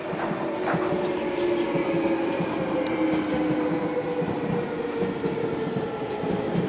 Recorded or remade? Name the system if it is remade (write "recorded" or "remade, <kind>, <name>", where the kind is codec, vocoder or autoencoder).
recorded